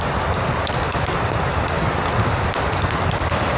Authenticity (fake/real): real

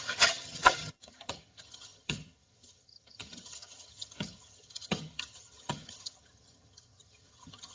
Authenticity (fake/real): fake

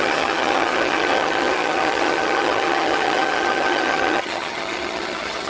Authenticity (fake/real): fake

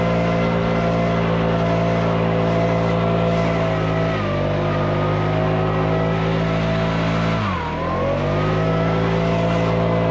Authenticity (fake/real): real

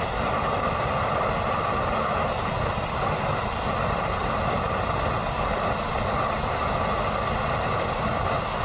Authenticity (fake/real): real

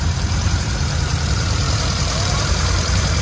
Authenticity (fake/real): fake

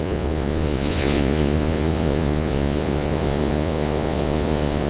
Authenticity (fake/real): fake